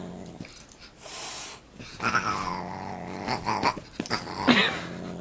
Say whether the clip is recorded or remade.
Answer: recorded